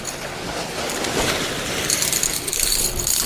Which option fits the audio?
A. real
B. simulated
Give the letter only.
B